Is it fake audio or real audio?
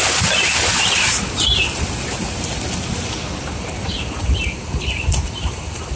real